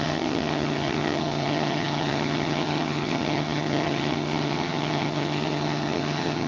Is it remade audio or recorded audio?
remade